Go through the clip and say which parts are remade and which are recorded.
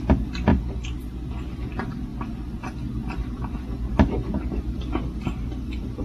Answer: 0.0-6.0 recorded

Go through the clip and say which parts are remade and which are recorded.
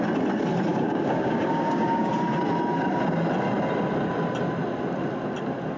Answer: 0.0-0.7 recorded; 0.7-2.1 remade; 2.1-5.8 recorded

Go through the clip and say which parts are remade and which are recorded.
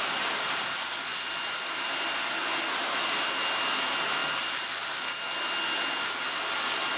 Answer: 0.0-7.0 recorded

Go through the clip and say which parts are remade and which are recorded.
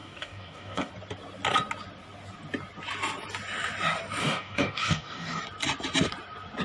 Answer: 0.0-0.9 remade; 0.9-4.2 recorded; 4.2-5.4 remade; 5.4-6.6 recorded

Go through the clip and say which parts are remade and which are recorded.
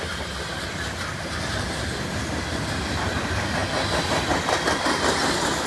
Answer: 0.0-5.7 recorded